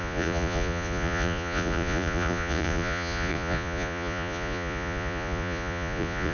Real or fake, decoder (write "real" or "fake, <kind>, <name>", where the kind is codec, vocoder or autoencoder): fake, vocoder, Vocos